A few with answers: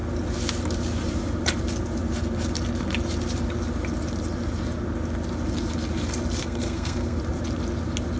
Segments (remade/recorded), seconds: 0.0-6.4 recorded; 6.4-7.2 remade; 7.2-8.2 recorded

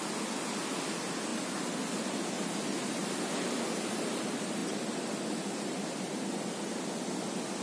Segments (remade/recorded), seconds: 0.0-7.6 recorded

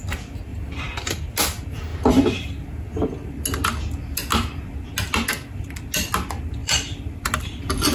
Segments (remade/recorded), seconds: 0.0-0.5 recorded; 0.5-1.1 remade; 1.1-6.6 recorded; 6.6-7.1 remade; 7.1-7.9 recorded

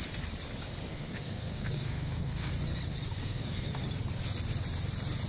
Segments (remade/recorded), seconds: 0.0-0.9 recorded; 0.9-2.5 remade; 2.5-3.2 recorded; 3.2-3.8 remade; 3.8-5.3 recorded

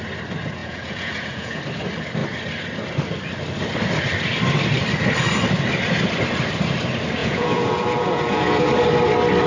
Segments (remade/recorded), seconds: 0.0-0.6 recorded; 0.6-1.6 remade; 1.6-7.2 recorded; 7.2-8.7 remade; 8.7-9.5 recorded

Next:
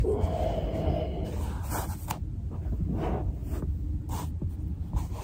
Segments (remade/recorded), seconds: 0.0-5.2 recorded